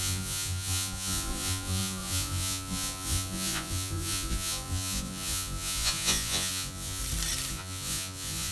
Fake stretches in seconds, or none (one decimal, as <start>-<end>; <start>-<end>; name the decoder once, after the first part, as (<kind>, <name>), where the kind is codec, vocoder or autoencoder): 0.0-7.0 (vocoder, Vocos); 7.5-8.5